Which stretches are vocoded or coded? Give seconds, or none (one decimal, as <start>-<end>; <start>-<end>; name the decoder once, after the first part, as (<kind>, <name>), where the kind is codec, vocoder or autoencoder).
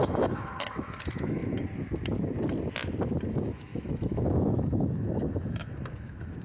0.0-1.4 (autoencoder, DAC-VAE); 3.3-6.4